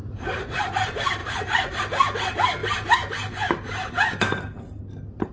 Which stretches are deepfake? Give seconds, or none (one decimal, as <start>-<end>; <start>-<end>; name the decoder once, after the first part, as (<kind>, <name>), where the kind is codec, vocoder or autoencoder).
0.0-0.6 (vocoder, Vocos); 1.2-1.8